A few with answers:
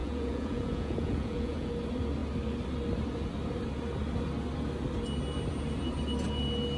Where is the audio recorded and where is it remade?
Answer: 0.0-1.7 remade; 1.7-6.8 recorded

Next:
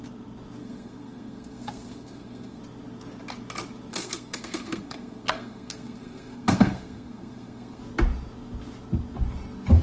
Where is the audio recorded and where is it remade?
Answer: 0.0-0.6 recorded; 0.6-2.6 remade; 2.6-3.9 recorded; 3.9-7.8 remade; 7.8-9.8 recorded

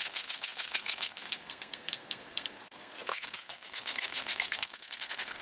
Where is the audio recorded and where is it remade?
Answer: 0.0-5.4 remade

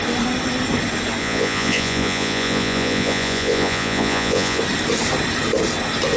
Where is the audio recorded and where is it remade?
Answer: 0.0-1.2 recorded; 1.2-4.6 remade; 4.6-6.2 recorded

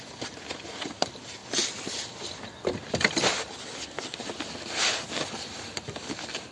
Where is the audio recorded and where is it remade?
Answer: 0.0-6.5 recorded

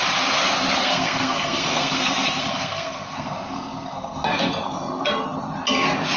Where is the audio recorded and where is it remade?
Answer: 0.0-0.8 recorded; 0.8-4.5 remade; 4.5-6.2 recorded

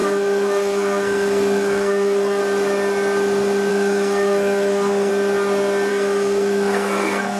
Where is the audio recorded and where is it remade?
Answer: 0.0-2.4 remade; 2.4-3.7 recorded; 3.7-5.1 remade; 5.1-5.9 recorded; 5.9-7.4 remade